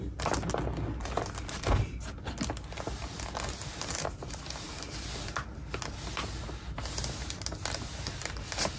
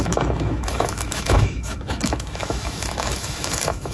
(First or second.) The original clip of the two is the first